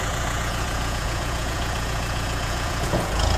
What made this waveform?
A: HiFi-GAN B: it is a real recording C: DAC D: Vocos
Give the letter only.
D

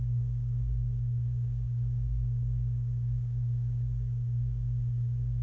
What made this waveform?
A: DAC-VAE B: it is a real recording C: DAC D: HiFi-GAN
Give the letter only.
C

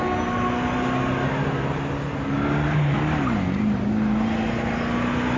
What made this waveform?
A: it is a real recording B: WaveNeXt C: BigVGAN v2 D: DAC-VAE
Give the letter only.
A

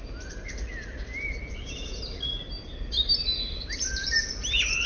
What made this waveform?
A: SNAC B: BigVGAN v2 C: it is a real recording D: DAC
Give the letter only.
C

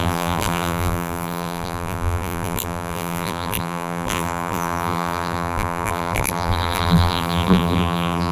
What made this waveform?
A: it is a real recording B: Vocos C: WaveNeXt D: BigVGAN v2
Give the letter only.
D